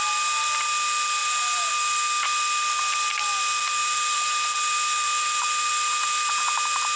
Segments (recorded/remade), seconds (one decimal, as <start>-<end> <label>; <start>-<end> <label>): 0.0-1.2 recorded; 1.2-1.7 remade; 1.7-3.8 recorded; 3.8-6.4 remade; 6.4-7.0 recorded